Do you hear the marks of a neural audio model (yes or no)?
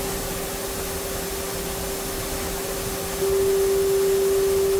no